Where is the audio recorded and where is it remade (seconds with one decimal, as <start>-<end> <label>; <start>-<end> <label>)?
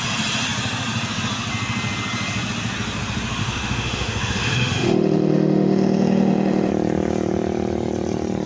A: 0.0-3.4 recorded; 3.4-6.7 remade; 6.7-8.5 recorded